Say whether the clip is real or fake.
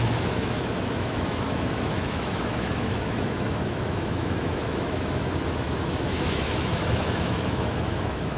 fake